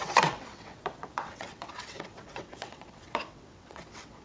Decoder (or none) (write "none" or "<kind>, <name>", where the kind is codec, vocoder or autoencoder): vocoder, WaveNeXt